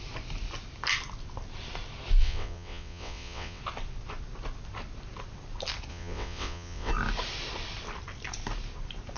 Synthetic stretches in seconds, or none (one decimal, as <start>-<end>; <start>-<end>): 2.2-3.6; 5.9-6.9